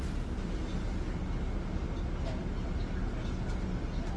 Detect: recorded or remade recorded